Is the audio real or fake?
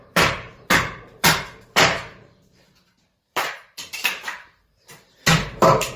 fake